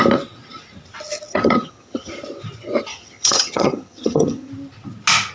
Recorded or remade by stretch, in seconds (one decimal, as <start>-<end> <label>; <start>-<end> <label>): 0.0-1.3 recorded; 1.3-2.1 remade; 2.1-2.9 recorded; 2.9-4.5 remade; 4.5-5.3 recorded